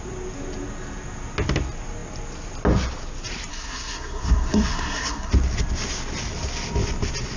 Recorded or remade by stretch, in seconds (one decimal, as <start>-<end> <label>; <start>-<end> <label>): 0.0-3.5 recorded; 3.5-5.3 remade; 5.3-7.4 recorded